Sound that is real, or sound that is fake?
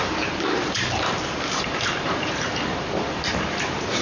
fake